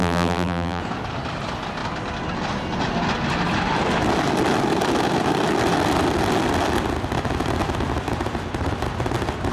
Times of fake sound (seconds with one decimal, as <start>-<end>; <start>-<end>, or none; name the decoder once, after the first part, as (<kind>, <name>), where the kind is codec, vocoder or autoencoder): 0.0-0.8 (vocoder, BigVGAN v2)